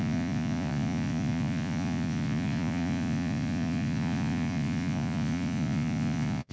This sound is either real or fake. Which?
fake